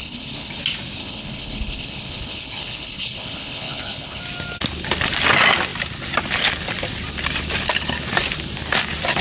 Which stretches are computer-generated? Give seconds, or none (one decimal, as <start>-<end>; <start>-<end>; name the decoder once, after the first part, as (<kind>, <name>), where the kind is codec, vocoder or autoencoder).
0.0-0.6 (codec, HILCodec); 1.0-4.2